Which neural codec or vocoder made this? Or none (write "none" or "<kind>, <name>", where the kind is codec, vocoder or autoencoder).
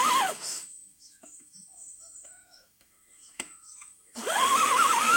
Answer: autoencoder, DAC-VAE